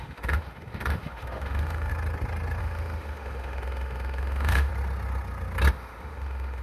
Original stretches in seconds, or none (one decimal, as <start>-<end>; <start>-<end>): 1.9-2.6; 4.7-5.7